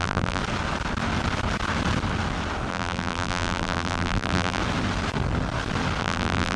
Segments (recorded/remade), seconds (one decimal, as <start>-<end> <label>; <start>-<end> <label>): 0.0-0.4 remade; 0.4-2.7 recorded; 2.7-4.6 remade; 4.6-6.0 recorded; 6.0-6.6 remade